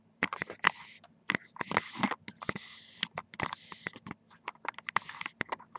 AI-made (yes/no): yes